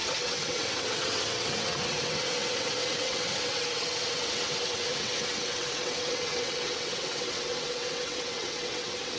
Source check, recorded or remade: remade